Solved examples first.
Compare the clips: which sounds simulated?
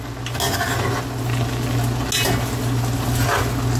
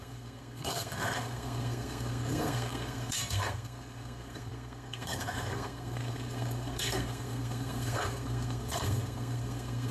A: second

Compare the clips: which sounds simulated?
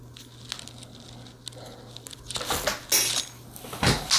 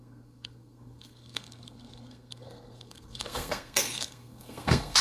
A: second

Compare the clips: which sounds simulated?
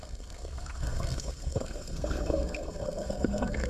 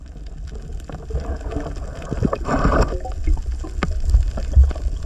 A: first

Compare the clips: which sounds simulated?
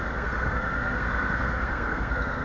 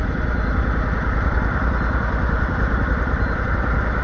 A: first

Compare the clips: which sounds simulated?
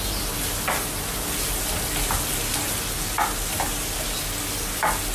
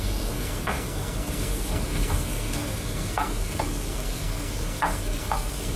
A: second